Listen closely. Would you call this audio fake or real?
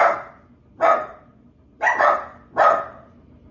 real